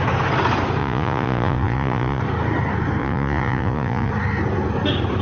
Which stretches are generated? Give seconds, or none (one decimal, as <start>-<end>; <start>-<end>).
0.8-2.2; 3.0-4.1